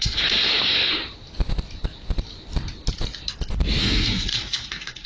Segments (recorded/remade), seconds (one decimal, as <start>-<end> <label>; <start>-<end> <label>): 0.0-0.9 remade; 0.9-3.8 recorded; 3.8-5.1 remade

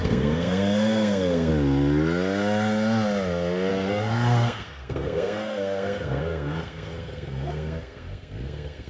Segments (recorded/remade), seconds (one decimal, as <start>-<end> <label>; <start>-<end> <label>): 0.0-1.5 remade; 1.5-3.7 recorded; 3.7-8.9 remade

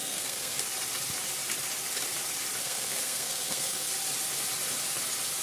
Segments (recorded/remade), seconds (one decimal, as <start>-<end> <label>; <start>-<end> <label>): 0.0-0.6 remade; 0.6-2.6 recorded; 2.6-3.9 remade; 3.9-5.4 recorded